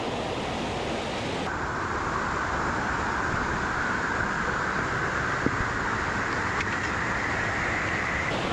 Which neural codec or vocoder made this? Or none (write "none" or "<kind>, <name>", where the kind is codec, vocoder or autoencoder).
none